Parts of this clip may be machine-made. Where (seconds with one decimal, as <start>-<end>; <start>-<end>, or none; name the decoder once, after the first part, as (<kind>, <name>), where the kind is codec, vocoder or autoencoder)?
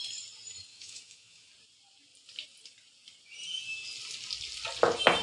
0.7-1.5 (autoencoder, DAC-VAE)